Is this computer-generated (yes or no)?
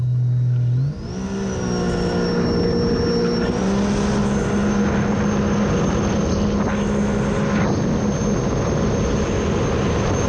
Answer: no